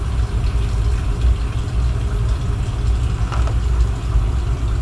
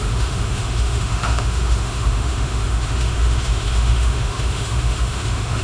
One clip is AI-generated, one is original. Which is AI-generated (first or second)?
second